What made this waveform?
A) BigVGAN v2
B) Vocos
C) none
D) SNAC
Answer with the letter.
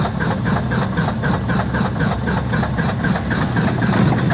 C